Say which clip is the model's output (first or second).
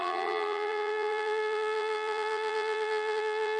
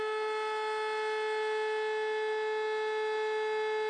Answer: first